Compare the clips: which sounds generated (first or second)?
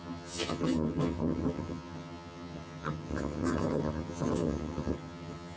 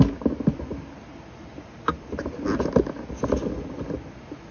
first